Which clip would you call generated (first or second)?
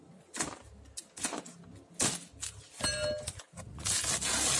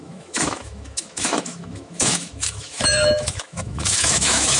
second